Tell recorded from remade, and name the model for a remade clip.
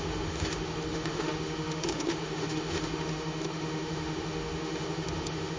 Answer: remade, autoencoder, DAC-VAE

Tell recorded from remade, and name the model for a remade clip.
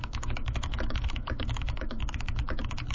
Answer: remade, autoencoder, DAC-VAE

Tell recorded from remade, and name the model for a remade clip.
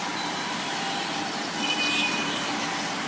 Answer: remade, vocoder, BigVGAN v2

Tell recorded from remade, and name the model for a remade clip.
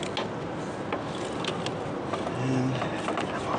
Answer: recorded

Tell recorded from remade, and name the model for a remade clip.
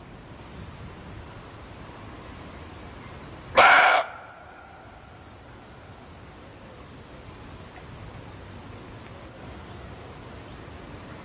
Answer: recorded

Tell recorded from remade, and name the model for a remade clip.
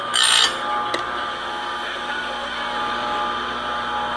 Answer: recorded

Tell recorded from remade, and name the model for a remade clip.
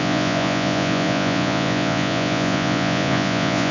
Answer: remade, vocoder, Vocos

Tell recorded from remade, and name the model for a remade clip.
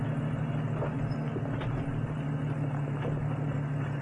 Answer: recorded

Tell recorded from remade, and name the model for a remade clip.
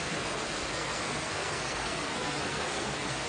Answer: remade, codec, SNAC